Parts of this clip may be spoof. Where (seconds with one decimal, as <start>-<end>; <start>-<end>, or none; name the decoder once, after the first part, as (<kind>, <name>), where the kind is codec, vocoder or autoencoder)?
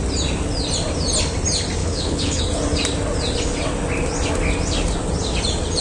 1.8-2.4 (codec, HILCodec)